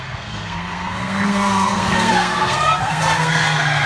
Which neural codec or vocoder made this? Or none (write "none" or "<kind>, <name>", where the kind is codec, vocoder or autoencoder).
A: codec, SNAC